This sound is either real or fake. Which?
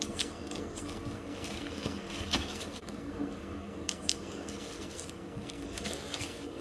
fake